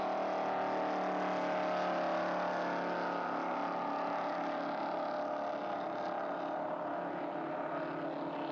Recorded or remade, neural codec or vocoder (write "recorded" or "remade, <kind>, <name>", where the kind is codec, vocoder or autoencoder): recorded